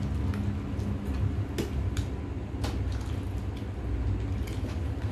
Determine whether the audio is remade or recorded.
recorded